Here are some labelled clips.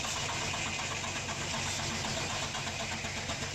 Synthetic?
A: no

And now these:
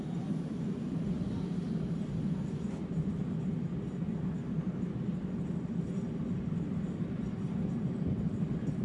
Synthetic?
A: no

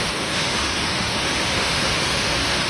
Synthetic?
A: yes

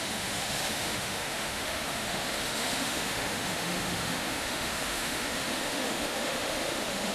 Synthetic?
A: yes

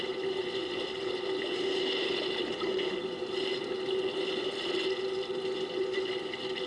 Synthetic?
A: no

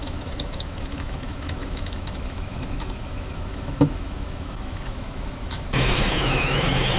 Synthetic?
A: yes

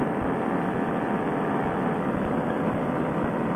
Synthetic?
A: no